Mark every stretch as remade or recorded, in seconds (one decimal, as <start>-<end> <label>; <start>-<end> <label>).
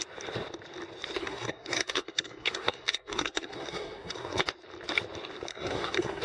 0.0-1.2 recorded; 1.2-4.4 remade; 4.4-5.5 recorded; 5.5-6.2 remade